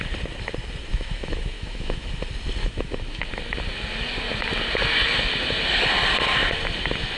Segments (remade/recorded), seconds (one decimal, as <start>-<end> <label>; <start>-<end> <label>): 0.0-0.9 recorded; 0.9-2.1 remade; 2.1-2.6 recorded; 2.6-3.3 remade; 3.3-7.2 recorded